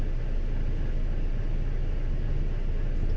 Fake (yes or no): no